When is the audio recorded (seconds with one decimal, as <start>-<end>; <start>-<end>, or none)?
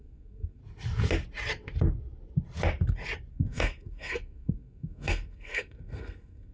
0.6-3.3